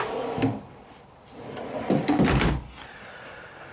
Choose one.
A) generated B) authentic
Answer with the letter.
B